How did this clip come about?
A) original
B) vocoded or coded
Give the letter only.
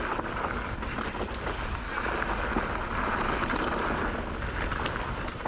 A